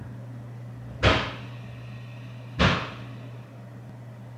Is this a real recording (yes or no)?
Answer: yes